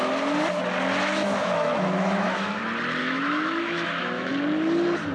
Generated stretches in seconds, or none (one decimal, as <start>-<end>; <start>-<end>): 1.2-2.6; 3.0-4.3

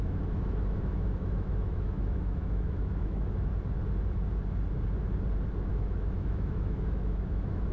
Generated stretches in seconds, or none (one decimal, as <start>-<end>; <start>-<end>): 0.0-3.5; 5.7-7.7

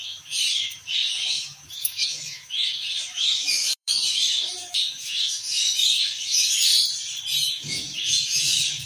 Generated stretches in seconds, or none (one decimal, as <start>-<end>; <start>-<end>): 0.0-6.7; 7.5-8.9

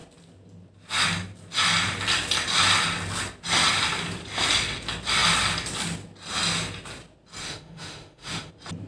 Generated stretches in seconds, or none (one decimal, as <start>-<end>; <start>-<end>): 7.4-8.5

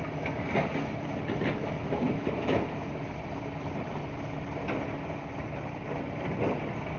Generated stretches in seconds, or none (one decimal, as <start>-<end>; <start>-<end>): 1.6-3.1

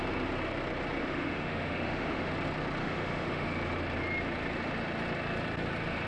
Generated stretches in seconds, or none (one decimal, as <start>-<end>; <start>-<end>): 1.0-2.3; 2.8-3.5

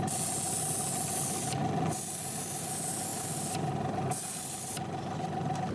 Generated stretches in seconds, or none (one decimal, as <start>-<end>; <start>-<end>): none

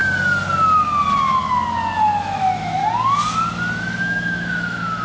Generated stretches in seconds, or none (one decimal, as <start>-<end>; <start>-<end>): 2.2-2.8; 3.8-5.0